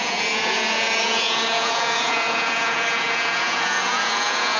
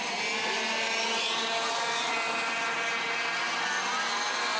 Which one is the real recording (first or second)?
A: second